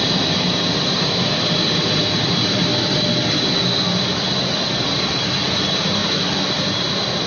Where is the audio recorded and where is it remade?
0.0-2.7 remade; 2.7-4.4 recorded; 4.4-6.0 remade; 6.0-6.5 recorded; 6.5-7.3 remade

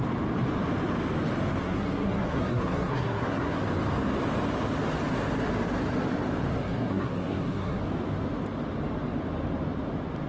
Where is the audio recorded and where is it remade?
0.0-1.6 recorded; 1.6-3.6 remade; 3.6-6.5 recorded; 6.5-7.8 remade; 7.8-10.3 recorded

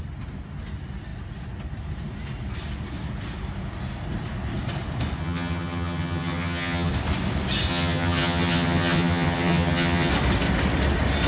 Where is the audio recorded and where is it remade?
0.0-5.2 recorded; 5.2-6.9 remade; 6.9-7.7 recorded; 7.7-10.1 remade; 10.1-11.3 recorded

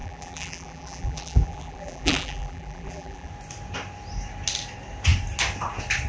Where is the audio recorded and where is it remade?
0.0-3.3 remade; 3.3-6.1 recorded

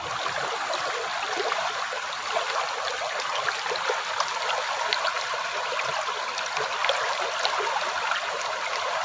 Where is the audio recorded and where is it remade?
0.0-9.0 recorded

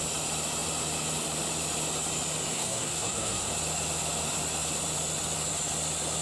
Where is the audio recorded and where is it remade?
0.0-2.5 recorded; 2.5-3.5 remade; 3.5-6.2 recorded

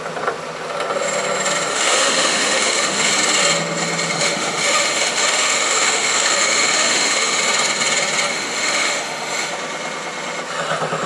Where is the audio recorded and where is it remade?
0.0-1.7 recorded; 1.7-3.1 remade; 3.1-4.1 recorded; 4.1-7.4 remade; 7.4-8.3 recorded; 8.3-9.5 remade; 9.5-11.1 recorded

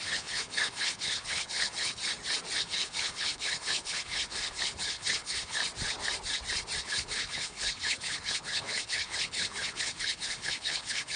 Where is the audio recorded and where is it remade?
0.0-2.0 remade; 2.0-2.6 recorded; 2.6-5.6 remade; 5.6-6.8 recorded; 6.8-11.2 remade